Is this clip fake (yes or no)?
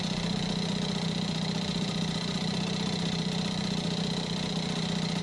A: no